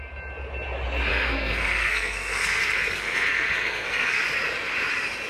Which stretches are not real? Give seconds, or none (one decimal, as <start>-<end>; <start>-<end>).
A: 1.1-4.2